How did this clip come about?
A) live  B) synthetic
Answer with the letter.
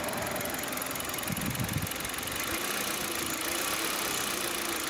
A